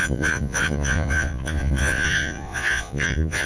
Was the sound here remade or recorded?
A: remade